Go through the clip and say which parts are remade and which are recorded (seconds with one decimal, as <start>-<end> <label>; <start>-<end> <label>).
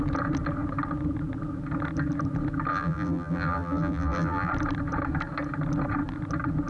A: 0.0-2.7 recorded; 2.7-4.5 remade; 4.5-6.7 recorded